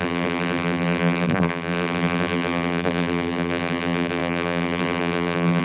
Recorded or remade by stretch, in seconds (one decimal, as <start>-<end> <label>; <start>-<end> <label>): 0.0-5.6 remade